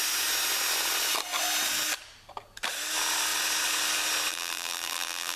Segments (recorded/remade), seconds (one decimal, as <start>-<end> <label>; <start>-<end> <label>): 0.0-4.3 recorded; 4.3-5.4 remade